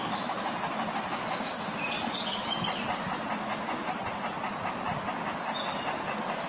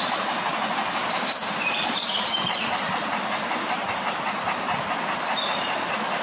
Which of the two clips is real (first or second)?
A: first